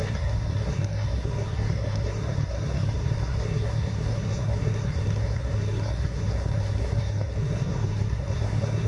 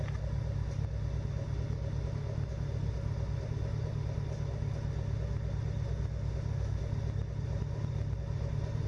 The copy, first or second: first